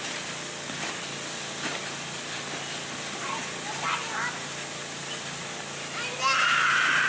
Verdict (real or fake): real